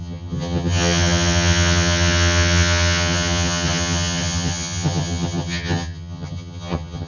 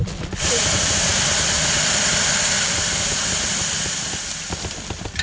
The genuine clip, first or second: second